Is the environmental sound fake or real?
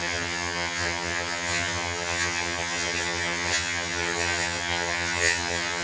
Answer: fake